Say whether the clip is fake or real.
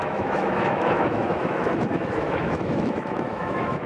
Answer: fake